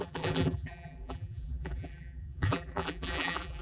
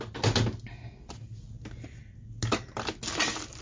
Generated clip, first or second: first